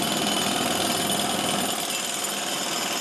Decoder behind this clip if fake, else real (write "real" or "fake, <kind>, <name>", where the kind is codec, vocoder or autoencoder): real